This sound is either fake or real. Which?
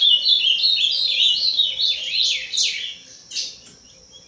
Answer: real